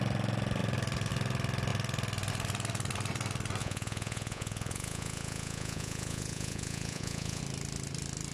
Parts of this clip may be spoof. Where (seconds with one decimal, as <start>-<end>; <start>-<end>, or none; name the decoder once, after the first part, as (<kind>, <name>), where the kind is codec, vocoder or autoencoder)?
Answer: 3.6-7.4 (vocoder, Vocos)